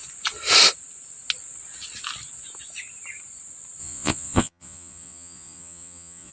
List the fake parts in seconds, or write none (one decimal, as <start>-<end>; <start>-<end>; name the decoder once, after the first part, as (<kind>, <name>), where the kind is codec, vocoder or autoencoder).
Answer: 3.8-6.3 (vocoder, Vocos)